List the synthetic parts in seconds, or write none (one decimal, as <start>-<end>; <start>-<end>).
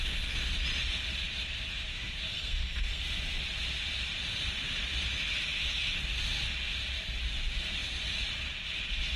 2.3-3.0